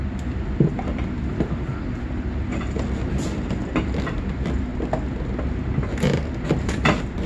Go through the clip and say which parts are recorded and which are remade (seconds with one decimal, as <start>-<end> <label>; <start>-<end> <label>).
0.0-4.7 remade; 4.7-5.5 recorded; 5.5-7.3 remade